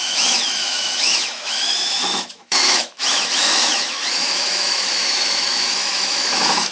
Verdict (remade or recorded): remade